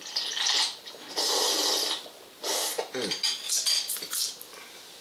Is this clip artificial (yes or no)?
no